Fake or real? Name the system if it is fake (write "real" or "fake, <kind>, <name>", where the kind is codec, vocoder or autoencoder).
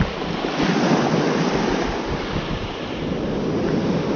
real